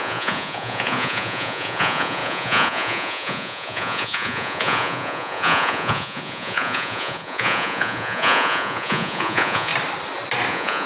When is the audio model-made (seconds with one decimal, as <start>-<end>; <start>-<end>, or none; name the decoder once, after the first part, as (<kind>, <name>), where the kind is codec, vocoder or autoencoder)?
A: 0.0-9.7 (vocoder, Vocos); 10.5-10.9